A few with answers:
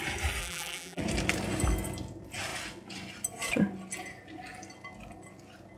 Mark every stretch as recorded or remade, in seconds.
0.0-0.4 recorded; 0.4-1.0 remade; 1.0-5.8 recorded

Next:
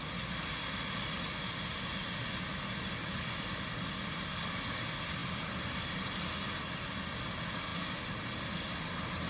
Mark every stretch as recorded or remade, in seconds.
0.0-5.2 recorded; 5.2-5.9 remade; 5.9-7.7 recorded; 7.7-8.9 remade; 8.9-9.3 recorded

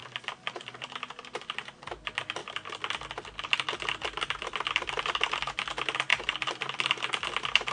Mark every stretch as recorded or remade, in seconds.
0.0-7.7 recorded

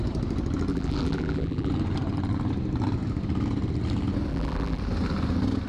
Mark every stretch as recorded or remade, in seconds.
0.0-0.7 recorded; 0.7-1.7 remade; 1.7-4.3 recorded; 4.3-4.8 remade; 4.8-5.7 recorded

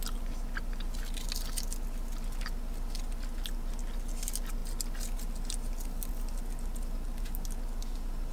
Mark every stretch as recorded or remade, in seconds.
0.0-8.3 recorded

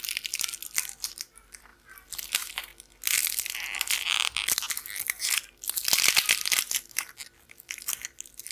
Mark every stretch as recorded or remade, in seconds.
0.0-2.7 remade; 2.7-7.8 recorded; 7.8-8.5 remade

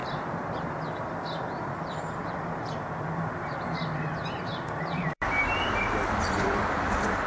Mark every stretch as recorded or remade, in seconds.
0.0-0.7 remade; 0.7-2.2 recorded; 2.2-6.6 remade; 6.6-7.3 recorded